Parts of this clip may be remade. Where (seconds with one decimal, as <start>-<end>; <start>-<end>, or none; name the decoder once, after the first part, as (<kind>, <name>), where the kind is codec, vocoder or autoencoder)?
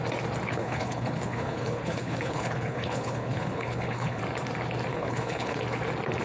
0.5-4.2 (codec, HILCodec); 4.9-5.6